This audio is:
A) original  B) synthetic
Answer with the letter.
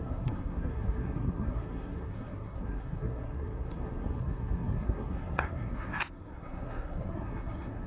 B